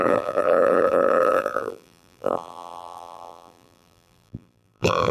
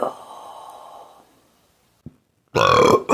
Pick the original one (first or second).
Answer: second